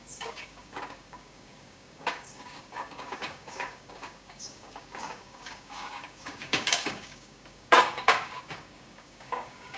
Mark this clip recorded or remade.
remade